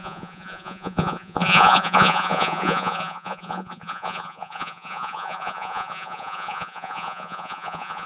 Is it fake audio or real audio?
fake